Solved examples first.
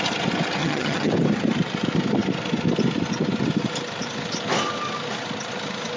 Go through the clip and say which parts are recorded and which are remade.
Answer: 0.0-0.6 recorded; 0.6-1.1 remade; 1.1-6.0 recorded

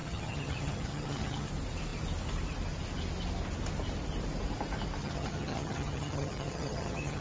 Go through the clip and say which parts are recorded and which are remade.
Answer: 0.0-1.5 remade; 1.5-5.0 recorded; 5.0-7.2 remade

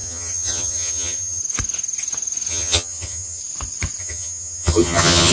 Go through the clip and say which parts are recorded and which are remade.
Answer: 0.0-1.4 remade; 1.4-2.5 recorded; 2.5-3.4 remade; 3.4-4.0 recorded; 4.0-5.3 remade

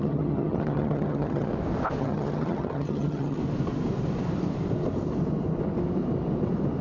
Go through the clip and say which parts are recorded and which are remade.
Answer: 0.0-1.5 remade; 1.5-2.0 recorded; 2.0-3.4 remade; 3.4-6.8 recorded

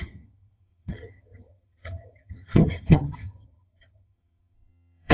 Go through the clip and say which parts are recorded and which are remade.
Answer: 0.0-5.1 remade

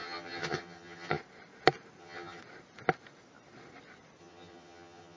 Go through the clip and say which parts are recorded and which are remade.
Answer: 0.0-1.2 remade; 1.2-2.0 recorded; 2.0-2.4 remade; 2.4-4.2 recorded; 4.2-5.2 remade

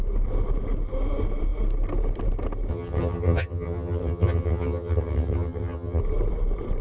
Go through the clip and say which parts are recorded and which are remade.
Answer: 0.0-2.7 recorded; 2.7-6.0 remade; 6.0-6.8 recorded